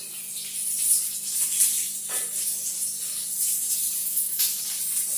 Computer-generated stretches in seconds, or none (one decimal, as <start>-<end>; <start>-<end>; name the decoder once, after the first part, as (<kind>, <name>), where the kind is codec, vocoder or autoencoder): 4.0-4.6 (autoencoder, DAC-VAE)